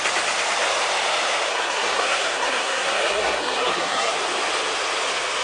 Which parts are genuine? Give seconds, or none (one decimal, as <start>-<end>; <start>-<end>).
0.0-1.5; 4.1-5.4